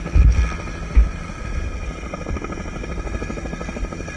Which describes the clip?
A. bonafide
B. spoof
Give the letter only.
A